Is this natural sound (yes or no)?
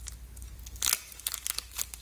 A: yes